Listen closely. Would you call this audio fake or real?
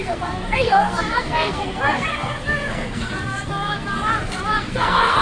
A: fake